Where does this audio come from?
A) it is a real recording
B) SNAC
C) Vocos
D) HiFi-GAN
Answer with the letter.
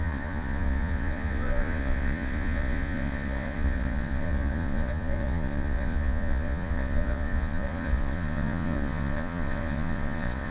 C